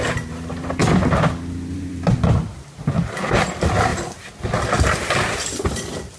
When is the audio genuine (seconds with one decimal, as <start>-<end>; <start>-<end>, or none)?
0.0-6.2